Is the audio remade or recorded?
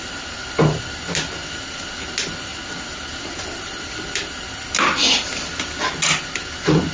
recorded